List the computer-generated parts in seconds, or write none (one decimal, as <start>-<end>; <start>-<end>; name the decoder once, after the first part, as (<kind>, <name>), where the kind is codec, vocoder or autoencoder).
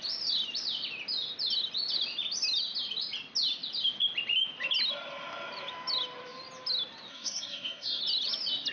7.1-8.0 (codec, SNAC)